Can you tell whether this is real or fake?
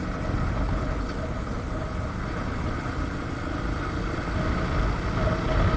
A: real